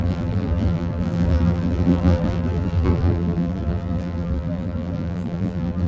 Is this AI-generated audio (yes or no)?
yes